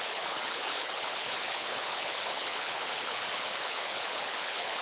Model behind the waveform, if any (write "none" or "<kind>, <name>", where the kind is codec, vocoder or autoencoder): codec, HILCodec